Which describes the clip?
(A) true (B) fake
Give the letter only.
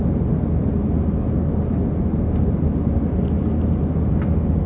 A